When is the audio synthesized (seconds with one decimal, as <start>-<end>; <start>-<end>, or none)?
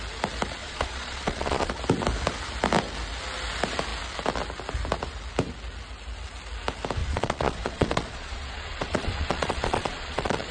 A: 0.6-1.7; 7.0-10.5